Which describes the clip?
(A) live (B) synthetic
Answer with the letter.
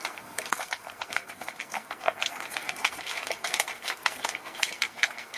B